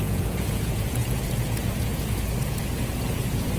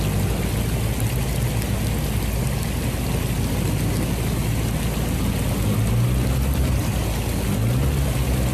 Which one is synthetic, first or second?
first